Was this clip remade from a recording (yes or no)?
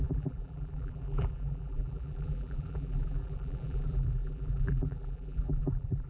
yes